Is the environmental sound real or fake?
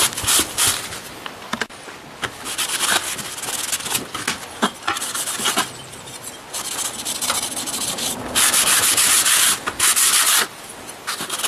real